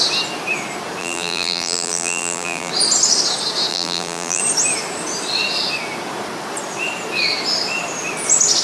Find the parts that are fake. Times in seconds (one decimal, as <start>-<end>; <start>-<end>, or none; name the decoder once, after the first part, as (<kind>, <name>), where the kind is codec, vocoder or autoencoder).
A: 1.0-2.7 (vocoder, BigVGAN v2); 3.7-4.4

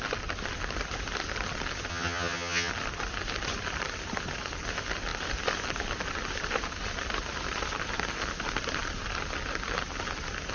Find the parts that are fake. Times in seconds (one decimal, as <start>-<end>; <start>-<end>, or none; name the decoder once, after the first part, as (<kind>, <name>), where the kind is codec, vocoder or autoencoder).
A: 1.9-2.7 (vocoder, HiFi-GAN)